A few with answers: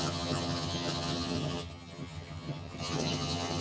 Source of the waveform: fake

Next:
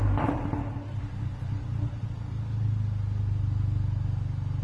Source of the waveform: real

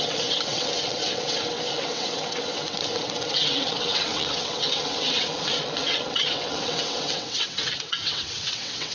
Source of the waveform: fake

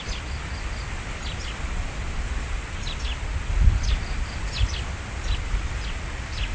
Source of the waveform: real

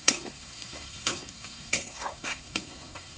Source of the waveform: fake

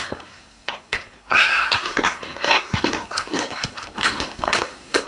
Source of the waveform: fake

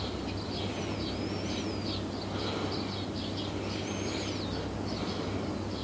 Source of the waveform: real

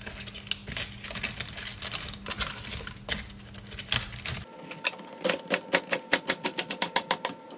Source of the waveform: real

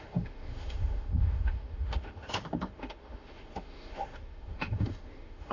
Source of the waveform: fake